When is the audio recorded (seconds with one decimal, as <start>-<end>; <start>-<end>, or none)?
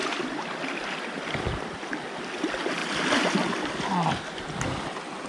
1.7-5.3